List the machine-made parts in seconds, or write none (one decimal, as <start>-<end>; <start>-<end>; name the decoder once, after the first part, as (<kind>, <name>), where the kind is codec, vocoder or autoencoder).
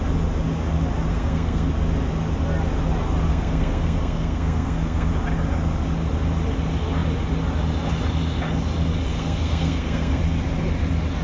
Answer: 1.1-1.7 (codec, SNAC); 3.3-5.1; 9.1-10.2